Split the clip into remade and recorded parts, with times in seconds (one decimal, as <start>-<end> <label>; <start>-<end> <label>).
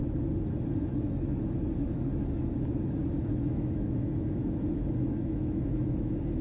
0.0-0.6 recorded; 0.6-6.4 remade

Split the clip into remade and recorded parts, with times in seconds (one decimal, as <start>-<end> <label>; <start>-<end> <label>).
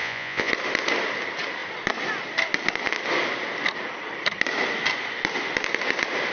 0.0-0.5 remade; 0.5-6.3 recorded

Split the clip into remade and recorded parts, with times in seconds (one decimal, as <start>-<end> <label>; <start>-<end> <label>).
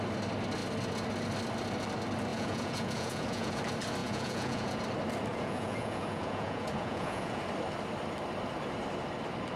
0.0-2.3 recorded; 2.3-3.6 remade; 3.6-4.0 recorded; 4.0-4.8 remade; 4.8-5.3 recorded; 5.3-7.4 remade; 7.4-9.6 recorded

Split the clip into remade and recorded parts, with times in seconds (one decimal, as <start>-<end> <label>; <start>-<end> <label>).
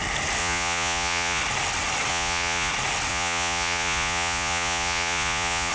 0.0-0.4 recorded; 0.4-1.4 remade; 1.4-2.1 recorded; 2.1-2.7 remade; 2.7-3.1 recorded; 3.1-5.7 remade